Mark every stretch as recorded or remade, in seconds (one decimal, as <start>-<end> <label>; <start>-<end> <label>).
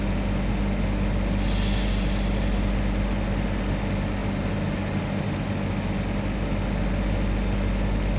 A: 0.0-8.2 recorded